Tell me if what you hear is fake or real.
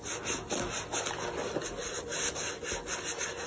real